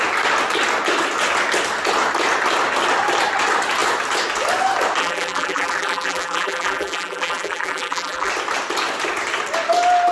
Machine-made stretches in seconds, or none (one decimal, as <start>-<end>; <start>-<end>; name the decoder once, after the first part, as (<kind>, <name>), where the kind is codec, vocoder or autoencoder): 5.0-8.3 (vocoder, BigVGAN v2)